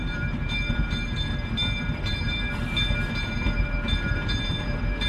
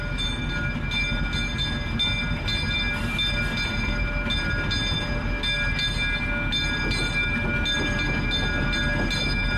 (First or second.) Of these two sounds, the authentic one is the second